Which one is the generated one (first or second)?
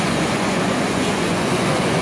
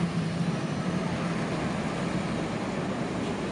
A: first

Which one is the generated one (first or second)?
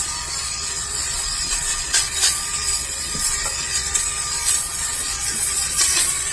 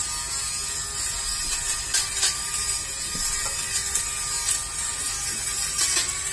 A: first